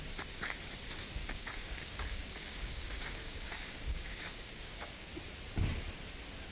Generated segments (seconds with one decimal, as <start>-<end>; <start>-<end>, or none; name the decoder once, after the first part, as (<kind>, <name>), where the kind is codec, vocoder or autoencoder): 1.2-5.1 (codec, DAC)